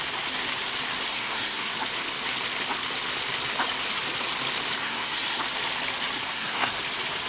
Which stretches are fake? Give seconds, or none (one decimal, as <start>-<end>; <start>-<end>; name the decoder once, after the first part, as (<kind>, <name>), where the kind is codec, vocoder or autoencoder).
1.1-1.7 (codec, SNAC); 4.8-5.4; 6.3-6.8